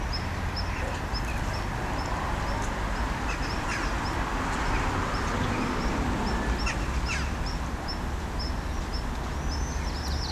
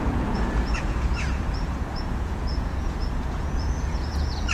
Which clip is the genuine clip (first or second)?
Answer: first